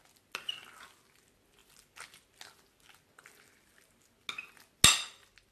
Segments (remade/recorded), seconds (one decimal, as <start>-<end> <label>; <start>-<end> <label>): 0.0-5.5 recorded